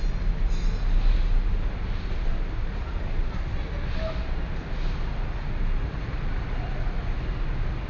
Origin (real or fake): real